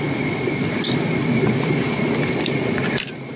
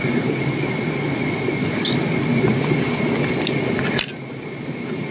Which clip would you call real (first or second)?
second